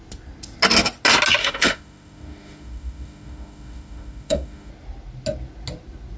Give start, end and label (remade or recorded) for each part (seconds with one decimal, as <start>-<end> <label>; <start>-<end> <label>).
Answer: 0.0-1.4 recorded; 1.4-4.7 remade; 4.7-6.2 recorded